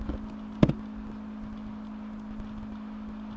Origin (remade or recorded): recorded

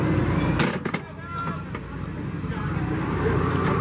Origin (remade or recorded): recorded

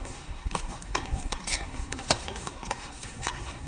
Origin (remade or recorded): remade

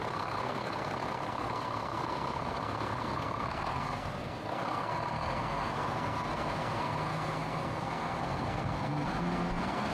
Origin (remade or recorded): remade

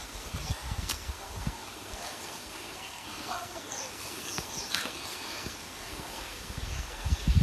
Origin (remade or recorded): remade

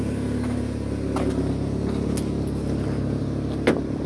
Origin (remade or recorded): recorded